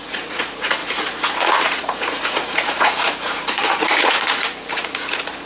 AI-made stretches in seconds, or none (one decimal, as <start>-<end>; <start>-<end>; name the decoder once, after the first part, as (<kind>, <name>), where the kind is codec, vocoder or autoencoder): 0.0-5.5 (vocoder, Vocos)